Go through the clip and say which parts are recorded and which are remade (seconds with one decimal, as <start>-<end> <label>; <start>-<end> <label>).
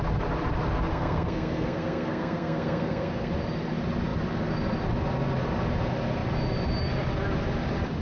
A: 0.0-0.9 recorded; 0.9-3.3 remade; 3.3-8.0 recorded